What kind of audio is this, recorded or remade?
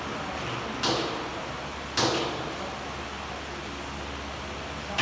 recorded